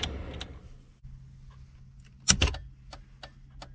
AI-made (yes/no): no